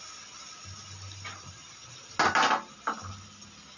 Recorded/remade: recorded